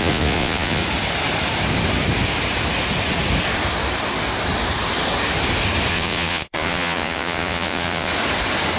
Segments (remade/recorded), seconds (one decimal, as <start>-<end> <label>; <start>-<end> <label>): 0.0-0.8 remade; 0.8-5.9 recorded; 5.9-8.1 remade; 8.1-8.8 recorded